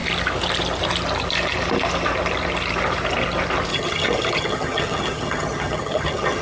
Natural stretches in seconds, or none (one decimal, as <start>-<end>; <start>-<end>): 0.0-3.7